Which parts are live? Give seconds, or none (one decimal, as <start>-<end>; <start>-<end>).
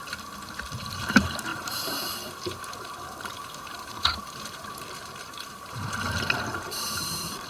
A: none